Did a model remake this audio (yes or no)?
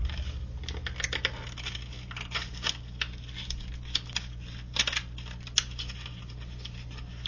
no